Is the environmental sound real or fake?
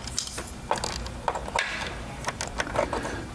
real